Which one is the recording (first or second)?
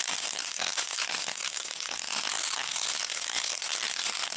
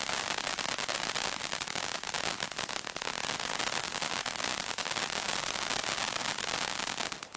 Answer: second